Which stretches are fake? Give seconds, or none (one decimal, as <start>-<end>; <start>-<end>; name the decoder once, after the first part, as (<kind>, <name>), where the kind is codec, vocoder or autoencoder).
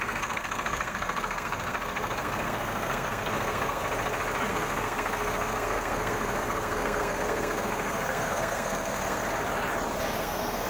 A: 0.0-3.8 (codec, SNAC); 4.5-9.2; 10.2-10.7